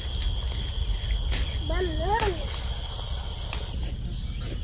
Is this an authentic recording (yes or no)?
yes